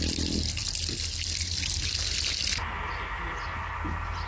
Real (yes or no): yes